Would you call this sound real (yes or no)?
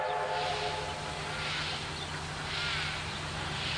yes